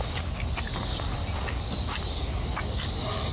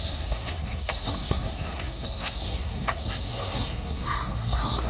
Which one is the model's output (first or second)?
second